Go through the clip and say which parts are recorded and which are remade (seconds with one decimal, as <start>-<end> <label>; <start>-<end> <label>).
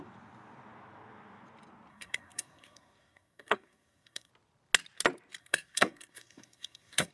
0.0-1.9 recorded; 1.9-4.3 remade; 4.3-5.4 recorded; 5.4-7.1 remade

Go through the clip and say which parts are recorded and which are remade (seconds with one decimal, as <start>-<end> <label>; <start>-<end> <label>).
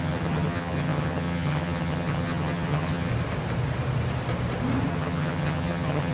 0.0-3.1 remade; 3.1-4.9 recorded; 4.9-6.1 remade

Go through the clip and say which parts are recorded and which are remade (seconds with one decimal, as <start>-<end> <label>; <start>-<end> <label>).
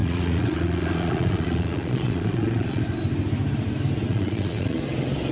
0.0-2.8 remade; 2.8-4.1 recorded; 4.1-4.8 remade; 4.8-5.3 recorded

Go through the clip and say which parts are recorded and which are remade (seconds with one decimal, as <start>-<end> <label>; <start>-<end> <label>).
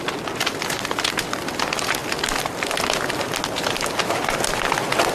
0.0-5.1 recorded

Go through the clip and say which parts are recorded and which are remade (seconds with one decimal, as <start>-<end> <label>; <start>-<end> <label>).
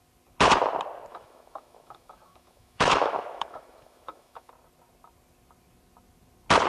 0.0-1.1 recorded; 1.1-4.5 remade; 4.5-6.7 recorded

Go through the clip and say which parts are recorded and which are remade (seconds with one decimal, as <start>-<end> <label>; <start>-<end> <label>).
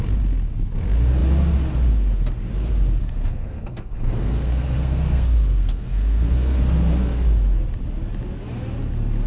0.0-3.0 recorded; 3.0-6.6 remade; 6.6-9.3 recorded